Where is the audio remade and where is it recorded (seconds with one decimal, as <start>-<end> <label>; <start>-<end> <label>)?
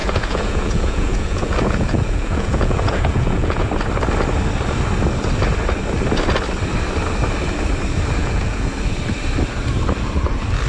0.0-3.7 remade; 3.7-8.2 recorded; 8.2-8.7 remade; 8.7-10.7 recorded